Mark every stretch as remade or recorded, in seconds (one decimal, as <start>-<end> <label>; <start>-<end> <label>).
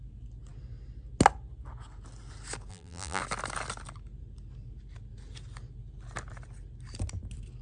0.0-2.7 recorded; 2.7-3.2 remade; 3.2-7.6 recorded